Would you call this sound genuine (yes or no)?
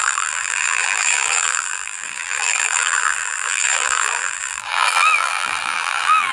no